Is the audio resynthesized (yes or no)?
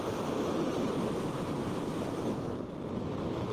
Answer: no